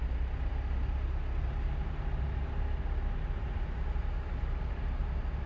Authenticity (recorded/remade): recorded